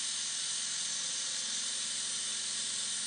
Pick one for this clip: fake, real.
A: real